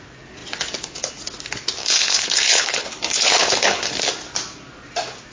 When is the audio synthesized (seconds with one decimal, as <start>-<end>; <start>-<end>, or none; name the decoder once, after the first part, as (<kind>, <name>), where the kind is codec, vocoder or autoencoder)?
1.8-3.9 (codec, HILCodec)